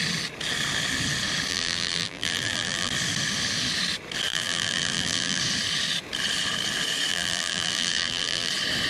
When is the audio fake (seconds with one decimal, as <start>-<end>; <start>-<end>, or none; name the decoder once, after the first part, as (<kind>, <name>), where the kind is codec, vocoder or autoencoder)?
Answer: 1.5-2.9 (vocoder, BigVGAN v2); 4.3-5.4; 7.1-8.5